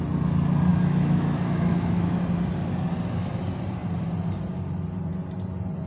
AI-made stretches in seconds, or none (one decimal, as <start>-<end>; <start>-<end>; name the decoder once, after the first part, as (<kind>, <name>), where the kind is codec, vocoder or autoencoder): 0.7-2.2 (autoencoder, DAC-VAE)